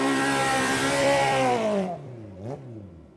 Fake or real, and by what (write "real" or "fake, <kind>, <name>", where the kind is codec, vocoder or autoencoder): fake, vocoder, BigVGAN v2